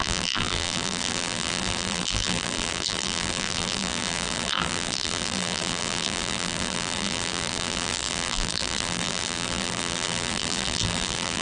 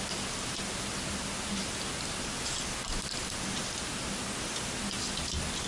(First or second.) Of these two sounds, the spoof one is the first